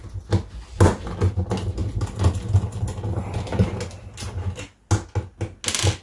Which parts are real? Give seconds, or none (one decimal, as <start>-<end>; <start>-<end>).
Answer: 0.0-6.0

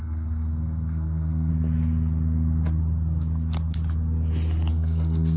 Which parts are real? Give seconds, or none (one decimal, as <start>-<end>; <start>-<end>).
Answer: 1.5-4.7

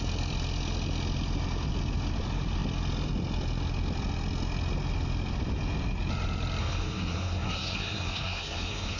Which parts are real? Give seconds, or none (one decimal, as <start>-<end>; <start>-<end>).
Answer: 0.0-6.6

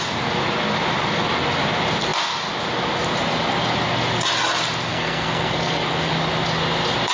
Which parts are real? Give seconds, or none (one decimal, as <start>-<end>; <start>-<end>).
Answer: 0.0-4.9; 6.1-7.1

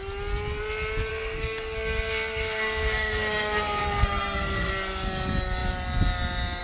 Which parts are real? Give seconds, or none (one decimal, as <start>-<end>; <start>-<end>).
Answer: 0.0-1.1; 4.7-6.6

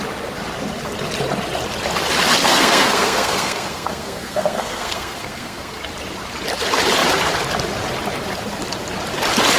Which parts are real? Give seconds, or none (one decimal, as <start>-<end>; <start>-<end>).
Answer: 0.0-2.4; 5.8-9.6